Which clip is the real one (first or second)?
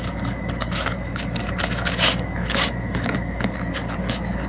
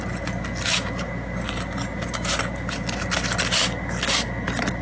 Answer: second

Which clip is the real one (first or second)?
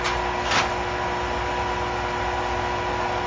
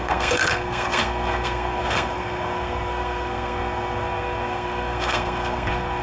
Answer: first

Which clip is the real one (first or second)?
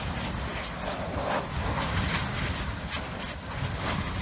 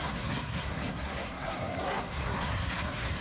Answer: first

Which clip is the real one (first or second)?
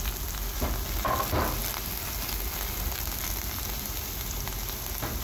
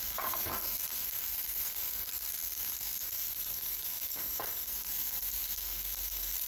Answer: first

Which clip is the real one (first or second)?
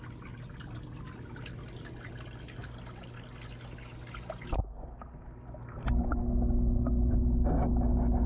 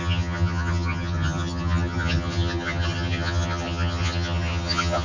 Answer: first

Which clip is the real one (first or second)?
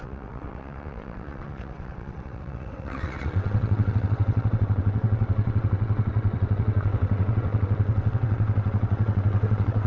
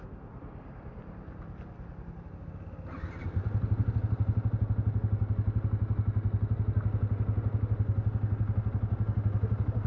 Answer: second